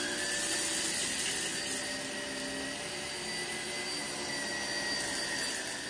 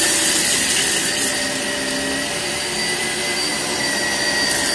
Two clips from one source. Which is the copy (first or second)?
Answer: second